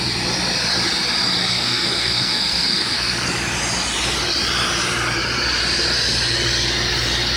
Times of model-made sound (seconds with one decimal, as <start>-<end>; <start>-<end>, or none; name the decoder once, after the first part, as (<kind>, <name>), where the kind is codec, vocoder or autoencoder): 1.4-3.3 (codec, SNAC)